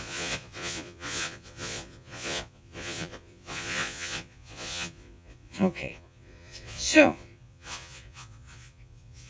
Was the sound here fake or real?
fake